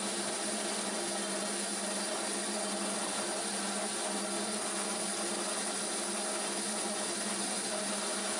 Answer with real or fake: real